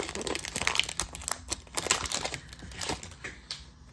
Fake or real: real